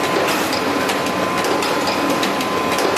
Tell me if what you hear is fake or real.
real